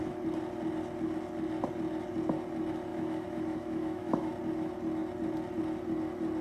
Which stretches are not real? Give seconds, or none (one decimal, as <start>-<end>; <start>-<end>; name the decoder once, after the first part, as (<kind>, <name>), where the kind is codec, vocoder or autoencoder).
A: 2.9-4.3 (autoencoder, DAC-VAE)